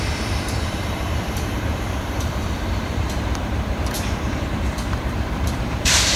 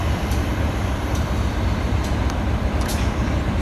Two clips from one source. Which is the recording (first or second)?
second